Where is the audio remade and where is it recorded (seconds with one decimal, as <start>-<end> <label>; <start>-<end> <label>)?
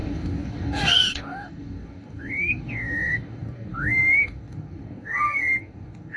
0.0-6.2 remade